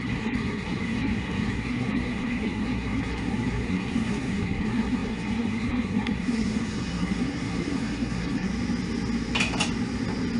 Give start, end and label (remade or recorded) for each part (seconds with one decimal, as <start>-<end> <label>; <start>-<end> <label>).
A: 0.0-8.5 remade; 8.5-10.4 recorded